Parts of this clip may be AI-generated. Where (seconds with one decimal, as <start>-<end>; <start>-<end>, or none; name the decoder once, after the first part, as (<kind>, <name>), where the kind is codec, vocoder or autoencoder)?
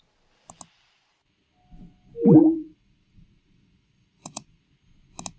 2.4-4.6 (vocoder, Vocos)